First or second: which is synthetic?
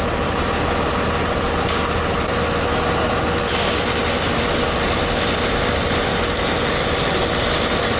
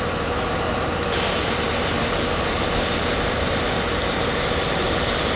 second